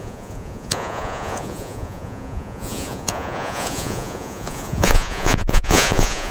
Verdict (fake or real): fake